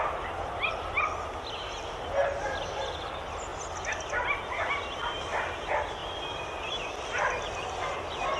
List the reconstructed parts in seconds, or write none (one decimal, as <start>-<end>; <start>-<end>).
none